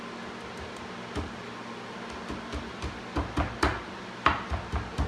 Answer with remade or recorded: recorded